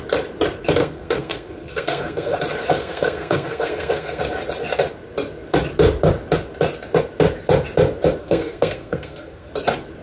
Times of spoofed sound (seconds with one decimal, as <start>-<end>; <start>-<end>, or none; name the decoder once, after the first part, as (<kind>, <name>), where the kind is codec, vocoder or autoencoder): 0.8-2.4 (codec, SNAC); 2.8-4.2; 8.2-9.5